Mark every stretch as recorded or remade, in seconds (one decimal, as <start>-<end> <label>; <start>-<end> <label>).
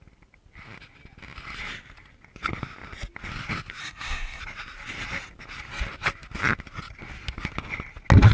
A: 0.0-3.8 recorded; 3.8-4.4 remade; 4.4-8.3 recorded